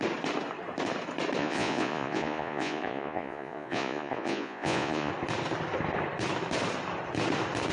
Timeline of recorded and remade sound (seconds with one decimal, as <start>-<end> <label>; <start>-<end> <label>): 0.0-1.4 recorded; 1.4-5.1 remade; 5.1-7.7 recorded